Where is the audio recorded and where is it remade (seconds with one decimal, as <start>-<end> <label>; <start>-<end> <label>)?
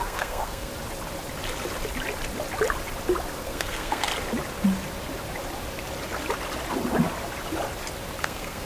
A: 0.0-0.7 remade; 0.7-3.4 recorded; 3.4-4.1 remade; 4.1-8.2 recorded; 8.2-8.7 remade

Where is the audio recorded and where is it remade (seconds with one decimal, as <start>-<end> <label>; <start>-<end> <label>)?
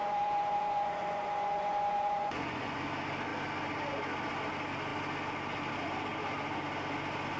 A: 0.0-2.8 remade; 2.8-7.4 recorded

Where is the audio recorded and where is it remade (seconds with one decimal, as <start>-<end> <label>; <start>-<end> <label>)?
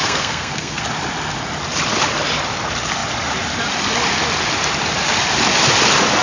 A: 0.0-0.8 remade; 0.8-6.2 recorded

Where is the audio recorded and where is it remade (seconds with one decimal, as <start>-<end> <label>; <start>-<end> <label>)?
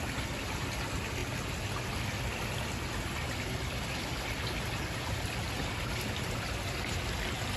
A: 0.0-7.6 recorded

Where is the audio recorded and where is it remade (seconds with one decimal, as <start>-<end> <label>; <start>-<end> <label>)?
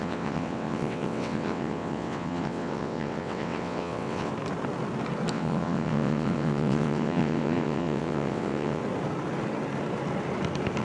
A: 0.0-4.3 remade; 4.3-5.3 recorded; 5.3-8.8 remade; 8.8-10.8 recorded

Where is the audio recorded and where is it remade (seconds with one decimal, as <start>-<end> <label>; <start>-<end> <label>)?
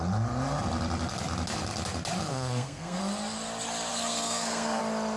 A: 0.0-2.3 recorded; 2.3-3.0 remade; 3.0-3.9 recorded; 3.9-4.8 remade; 4.8-5.2 recorded